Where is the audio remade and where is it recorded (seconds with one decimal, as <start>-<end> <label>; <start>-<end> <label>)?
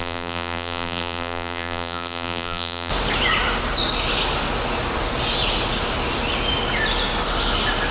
0.0-2.9 remade; 2.9-7.9 recorded